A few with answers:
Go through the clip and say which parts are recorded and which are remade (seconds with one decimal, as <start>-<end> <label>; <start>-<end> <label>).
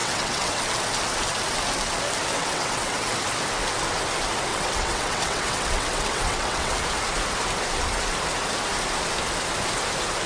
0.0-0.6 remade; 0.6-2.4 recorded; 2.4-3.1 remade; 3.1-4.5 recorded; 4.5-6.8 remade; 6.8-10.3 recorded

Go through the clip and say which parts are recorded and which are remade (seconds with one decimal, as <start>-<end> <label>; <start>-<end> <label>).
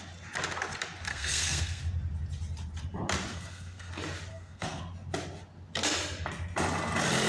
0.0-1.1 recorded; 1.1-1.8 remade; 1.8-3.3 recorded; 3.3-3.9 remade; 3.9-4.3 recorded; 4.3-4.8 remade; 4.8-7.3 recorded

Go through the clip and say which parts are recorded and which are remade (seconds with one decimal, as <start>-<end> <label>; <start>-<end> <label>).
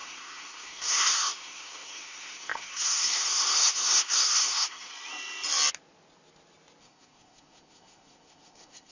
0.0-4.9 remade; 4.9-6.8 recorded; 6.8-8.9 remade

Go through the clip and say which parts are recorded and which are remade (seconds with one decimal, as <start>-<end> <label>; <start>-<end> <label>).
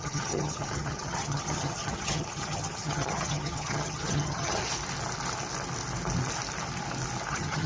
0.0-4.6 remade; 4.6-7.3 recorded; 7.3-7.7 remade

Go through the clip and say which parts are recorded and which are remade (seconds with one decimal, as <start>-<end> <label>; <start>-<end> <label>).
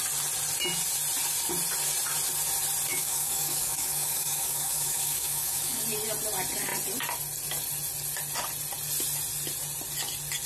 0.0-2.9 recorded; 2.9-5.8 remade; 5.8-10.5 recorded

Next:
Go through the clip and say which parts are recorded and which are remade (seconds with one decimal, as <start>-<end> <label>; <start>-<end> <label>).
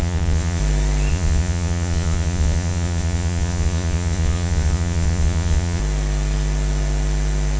0.0-0.6 remade; 0.6-1.1 recorded; 1.1-5.8 remade; 5.8-7.6 recorded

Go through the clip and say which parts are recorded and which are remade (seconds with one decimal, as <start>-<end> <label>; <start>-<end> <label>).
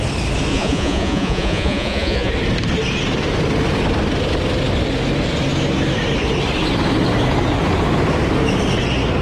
0.0-0.5 recorded; 0.5-2.3 remade; 2.3-9.2 recorded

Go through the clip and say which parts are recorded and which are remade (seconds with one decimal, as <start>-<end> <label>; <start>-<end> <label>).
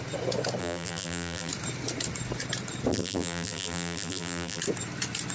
0.0-0.6 recorded; 0.6-1.5 remade; 1.5-2.9 recorded; 2.9-4.6 remade; 4.6-5.3 recorded